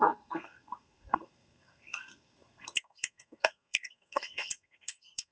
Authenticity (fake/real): fake